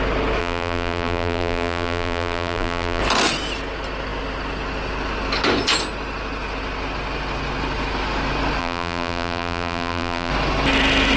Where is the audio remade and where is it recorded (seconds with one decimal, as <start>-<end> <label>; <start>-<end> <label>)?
0.0-0.4 recorded; 0.4-3.0 remade; 3.0-8.6 recorded; 8.6-10.3 remade; 10.3-11.2 recorded